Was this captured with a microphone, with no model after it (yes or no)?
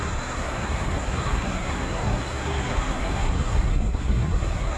no